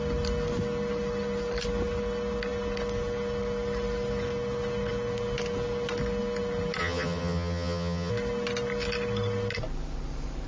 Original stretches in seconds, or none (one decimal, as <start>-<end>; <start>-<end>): 0.0-6.8; 8.1-10.5